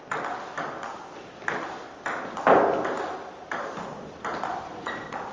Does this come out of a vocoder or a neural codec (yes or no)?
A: no